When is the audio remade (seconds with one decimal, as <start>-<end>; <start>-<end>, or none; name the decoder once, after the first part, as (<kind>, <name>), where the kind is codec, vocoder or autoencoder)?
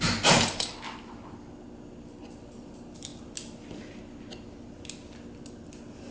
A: none